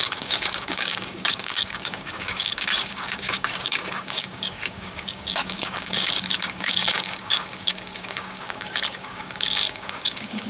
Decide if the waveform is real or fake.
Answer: fake